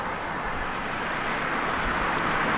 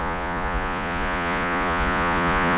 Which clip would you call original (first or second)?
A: first